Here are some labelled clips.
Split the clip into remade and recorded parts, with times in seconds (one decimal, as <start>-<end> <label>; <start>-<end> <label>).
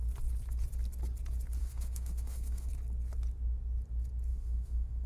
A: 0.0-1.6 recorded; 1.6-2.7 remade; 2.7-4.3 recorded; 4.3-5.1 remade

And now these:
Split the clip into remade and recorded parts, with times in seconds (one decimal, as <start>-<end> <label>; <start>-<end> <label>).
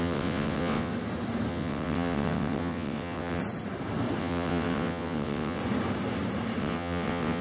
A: 0.0-0.9 remade; 0.9-1.5 recorded; 1.5-3.4 remade; 3.4-4.2 recorded; 4.2-5.6 remade; 5.6-6.6 recorded; 6.6-7.4 remade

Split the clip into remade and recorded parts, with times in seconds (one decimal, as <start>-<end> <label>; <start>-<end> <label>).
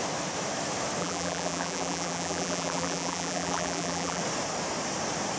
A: 0.0-1.0 recorded; 1.0-4.2 remade; 4.2-5.4 recorded